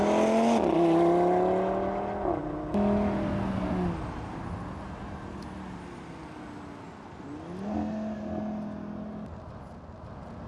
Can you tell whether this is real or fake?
real